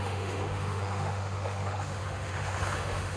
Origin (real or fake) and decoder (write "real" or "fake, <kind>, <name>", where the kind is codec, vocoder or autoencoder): fake, autoencoder, DAC-VAE